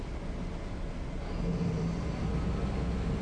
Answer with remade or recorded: recorded